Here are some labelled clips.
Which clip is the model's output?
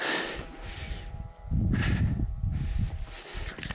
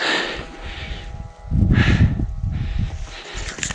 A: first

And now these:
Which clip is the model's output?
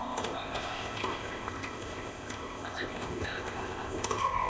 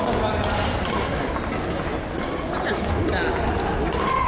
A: first